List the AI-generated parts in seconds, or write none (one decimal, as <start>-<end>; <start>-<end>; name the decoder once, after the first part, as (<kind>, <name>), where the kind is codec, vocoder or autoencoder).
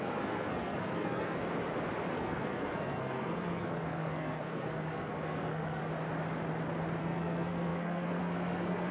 0.0-1.4 (codec, SNAC); 2.1-5.8; 7.0-8.9